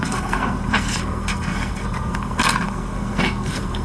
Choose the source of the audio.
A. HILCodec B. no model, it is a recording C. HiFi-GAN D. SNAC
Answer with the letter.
D